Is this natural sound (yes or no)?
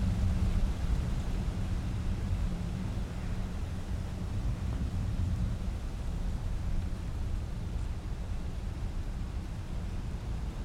yes